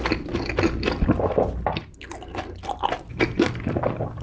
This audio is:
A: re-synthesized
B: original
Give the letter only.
B